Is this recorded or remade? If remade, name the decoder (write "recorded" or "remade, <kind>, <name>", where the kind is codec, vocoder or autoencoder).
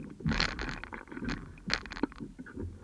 recorded